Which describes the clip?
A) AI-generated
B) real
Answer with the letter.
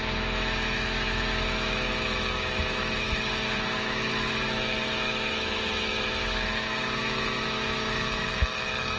A